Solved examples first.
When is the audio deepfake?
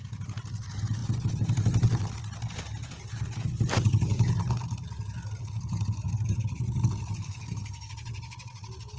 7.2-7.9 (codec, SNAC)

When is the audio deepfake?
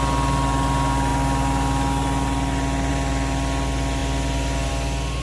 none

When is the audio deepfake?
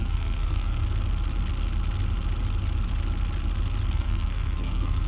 0.0-0.8 (codec, SNAC); 3.9-5.1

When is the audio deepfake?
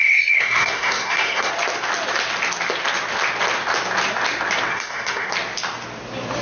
0.0-1.5 (codec, SNAC); 4.7-5.3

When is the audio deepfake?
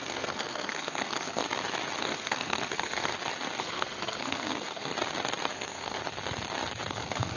0.0-1.4 (codec, SNAC); 2.0-3.1; 3.6-4.9; 5.5-6.0; 6.9-7.4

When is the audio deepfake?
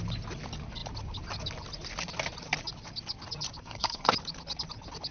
3.6-4.1 (codec, SNAC)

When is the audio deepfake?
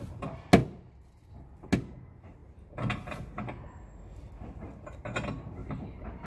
none